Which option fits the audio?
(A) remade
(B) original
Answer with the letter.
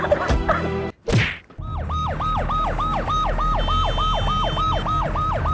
B